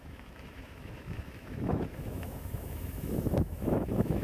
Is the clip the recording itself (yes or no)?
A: no